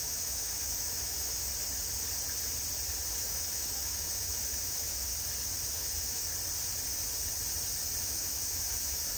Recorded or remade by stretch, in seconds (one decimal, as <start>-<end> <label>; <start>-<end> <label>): 0.0-1.5 remade; 1.5-3.1 recorded; 3.1-5.1 remade; 5.1-5.7 recorded; 5.7-6.3 remade; 6.3-8.0 recorded; 8.0-9.2 remade